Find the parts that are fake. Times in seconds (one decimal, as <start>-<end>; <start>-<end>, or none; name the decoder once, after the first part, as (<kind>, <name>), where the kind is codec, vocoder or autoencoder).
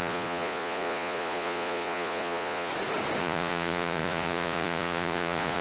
0.0-2.7 (vocoder, Vocos); 3.2-5.6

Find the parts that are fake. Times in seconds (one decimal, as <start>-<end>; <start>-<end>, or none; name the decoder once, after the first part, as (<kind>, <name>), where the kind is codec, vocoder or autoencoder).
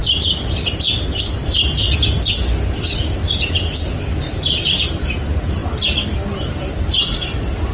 none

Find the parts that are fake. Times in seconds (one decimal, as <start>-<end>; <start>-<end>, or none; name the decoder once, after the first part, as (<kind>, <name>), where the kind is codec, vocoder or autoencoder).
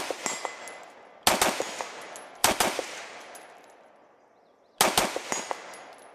2.4-4.2 (vocoder, BigVGAN v2)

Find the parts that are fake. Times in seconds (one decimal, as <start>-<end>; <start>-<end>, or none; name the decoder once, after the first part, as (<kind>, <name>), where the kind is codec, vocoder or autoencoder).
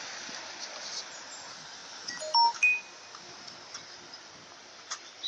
0.0-1.8 (vocoder, BigVGAN v2); 3.8-5.3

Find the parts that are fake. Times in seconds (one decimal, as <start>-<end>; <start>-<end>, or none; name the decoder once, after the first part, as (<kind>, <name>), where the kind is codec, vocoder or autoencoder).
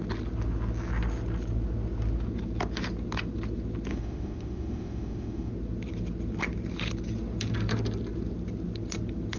3.9-5.5 (autoencoder, DAC-VAE)